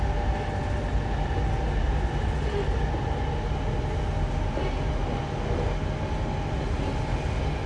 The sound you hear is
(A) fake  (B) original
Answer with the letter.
B